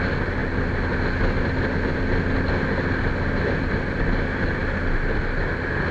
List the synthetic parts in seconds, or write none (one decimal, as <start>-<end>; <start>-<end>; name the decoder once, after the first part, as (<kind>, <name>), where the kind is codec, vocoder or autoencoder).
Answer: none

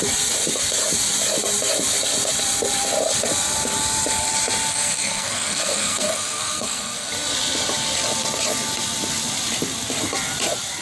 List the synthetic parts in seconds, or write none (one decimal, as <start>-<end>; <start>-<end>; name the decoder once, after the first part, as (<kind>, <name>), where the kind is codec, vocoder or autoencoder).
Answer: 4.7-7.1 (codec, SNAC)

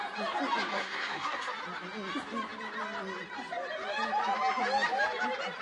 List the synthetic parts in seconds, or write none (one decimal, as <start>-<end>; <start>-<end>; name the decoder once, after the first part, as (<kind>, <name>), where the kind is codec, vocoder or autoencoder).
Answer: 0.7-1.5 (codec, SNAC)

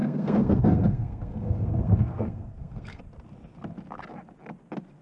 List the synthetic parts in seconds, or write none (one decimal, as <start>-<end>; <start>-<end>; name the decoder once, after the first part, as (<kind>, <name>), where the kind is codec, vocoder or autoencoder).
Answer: 0.0-3.0 (codec, SNAC)

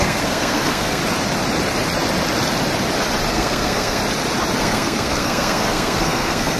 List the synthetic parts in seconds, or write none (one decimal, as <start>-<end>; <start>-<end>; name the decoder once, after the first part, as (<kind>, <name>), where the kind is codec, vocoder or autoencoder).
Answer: 0.0-1.0 (codec, SNAC); 3.3-4.0; 4.6-6.6